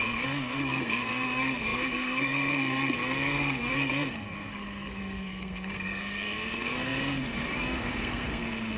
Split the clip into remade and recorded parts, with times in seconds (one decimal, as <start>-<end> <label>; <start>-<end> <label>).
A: 0.0-8.8 remade